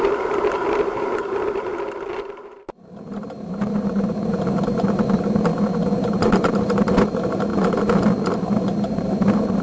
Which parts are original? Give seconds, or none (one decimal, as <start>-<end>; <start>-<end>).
1.7-2.7; 5.5-6.1; 7.5-8.3